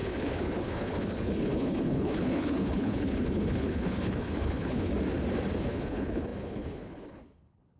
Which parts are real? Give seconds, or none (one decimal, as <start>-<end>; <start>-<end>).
4.9-5.6